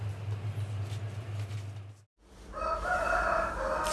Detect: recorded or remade recorded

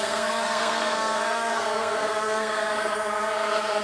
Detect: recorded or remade remade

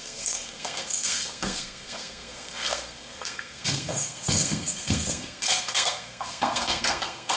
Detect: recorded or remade remade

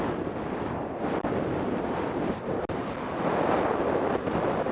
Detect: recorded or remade recorded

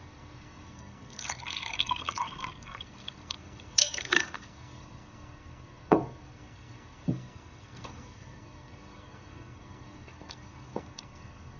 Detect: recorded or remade remade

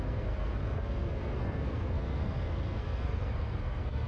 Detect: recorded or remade remade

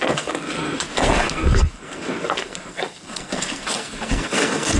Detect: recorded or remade remade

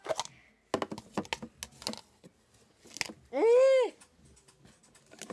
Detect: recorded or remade recorded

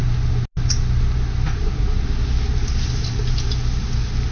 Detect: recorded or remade recorded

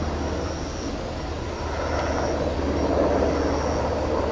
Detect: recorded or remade recorded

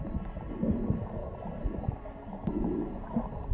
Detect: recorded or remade recorded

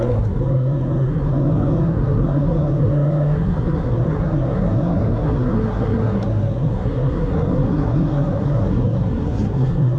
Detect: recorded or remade remade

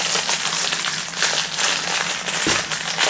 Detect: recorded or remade recorded